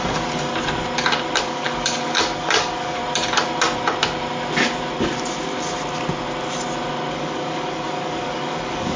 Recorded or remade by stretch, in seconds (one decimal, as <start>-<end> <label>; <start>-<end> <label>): 0.0-0.5 remade; 0.5-1.4 recorded; 1.4-3.0 remade; 3.0-7.1 recorded; 7.1-9.0 remade